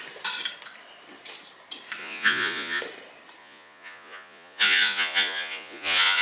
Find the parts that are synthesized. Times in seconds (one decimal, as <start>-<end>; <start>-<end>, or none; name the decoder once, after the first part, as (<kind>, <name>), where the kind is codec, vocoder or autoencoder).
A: 2.0-2.8 (vocoder, Vocos); 3.4-6.2